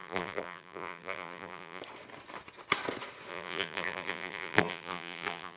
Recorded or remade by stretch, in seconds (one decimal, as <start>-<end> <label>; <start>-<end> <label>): 0.0-1.8 remade; 1.8-3.3 recorded; 3.3-5.6 remade

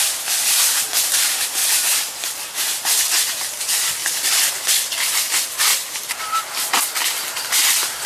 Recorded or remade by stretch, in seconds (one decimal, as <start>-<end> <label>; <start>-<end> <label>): 0.0-4.0 recorded; 4.0-4.5 remade; 4.5-5.7 recorded; 5.7-6.7 remade; 6.7-8.1 recorded

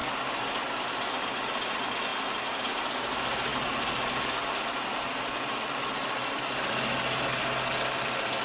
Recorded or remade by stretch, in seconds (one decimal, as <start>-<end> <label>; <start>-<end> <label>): 0.0-2.1 recorded; 2.1-2.6 remade; 2.6-3.5 recorded; 3.5-5.3 remade; 5.3-8.4 recorded